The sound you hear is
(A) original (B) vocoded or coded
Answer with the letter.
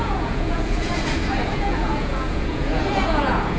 B